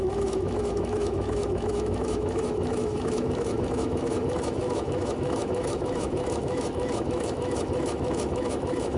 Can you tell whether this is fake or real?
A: fake